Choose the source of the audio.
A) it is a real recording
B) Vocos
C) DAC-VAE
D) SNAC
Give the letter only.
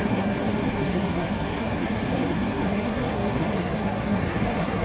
D